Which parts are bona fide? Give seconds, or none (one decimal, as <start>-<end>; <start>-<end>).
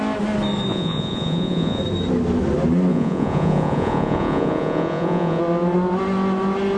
0.0-0.7; 1.8-2.9; 5.4-6.8